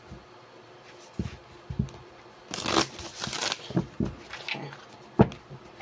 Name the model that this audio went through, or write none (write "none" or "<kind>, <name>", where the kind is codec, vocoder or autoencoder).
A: none